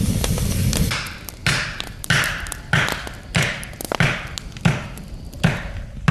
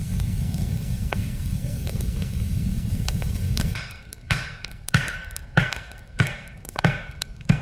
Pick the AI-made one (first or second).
second